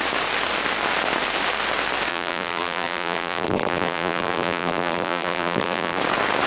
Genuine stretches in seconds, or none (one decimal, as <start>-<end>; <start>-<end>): 0.0-2.1; 6.0-6.5